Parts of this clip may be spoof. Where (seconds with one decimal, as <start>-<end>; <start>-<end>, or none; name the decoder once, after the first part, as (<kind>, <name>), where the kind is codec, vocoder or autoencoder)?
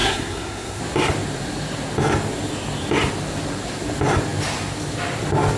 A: 0.0-0.8 (codec, SNAC)